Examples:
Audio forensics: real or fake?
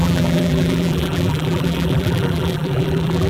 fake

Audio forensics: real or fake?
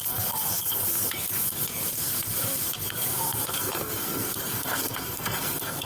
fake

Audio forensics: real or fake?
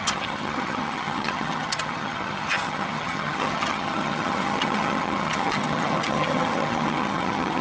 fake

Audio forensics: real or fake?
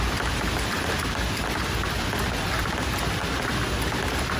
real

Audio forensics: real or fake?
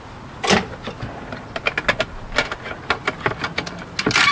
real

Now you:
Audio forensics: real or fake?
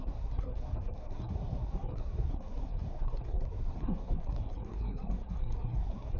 fake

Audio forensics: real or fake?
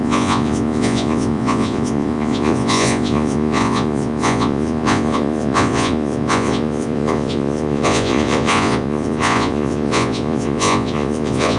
fake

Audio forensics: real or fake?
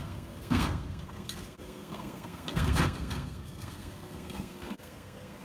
fake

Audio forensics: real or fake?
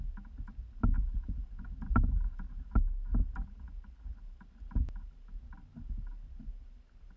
real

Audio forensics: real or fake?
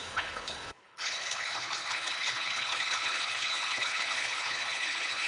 fake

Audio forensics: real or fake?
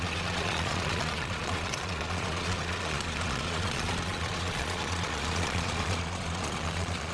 fake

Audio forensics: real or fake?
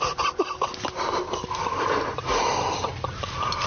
real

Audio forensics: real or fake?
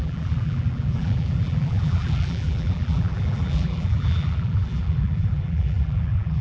fake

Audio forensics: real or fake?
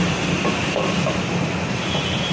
real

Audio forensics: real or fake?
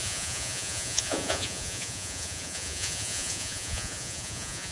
fake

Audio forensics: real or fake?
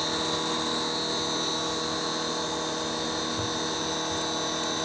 real